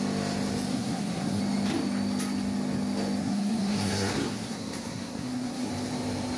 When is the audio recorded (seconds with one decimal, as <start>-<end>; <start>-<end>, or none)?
0.0-0.7; 1.4-3.2; 5.7-6.4